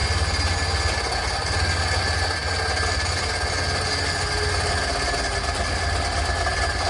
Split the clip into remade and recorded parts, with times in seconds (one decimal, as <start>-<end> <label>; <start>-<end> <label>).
0.0-6.9 recorded